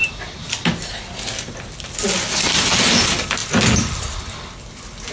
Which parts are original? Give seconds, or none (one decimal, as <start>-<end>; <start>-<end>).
0.0-5.1